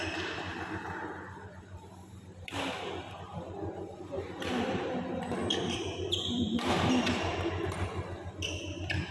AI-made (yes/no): yes